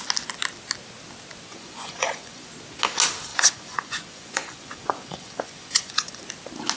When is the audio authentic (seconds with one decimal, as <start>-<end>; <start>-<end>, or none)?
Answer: 0.0-1.5; 2.5-3.3; 6.2-6.8